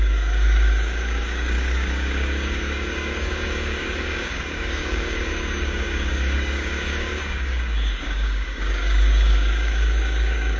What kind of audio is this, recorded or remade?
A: remade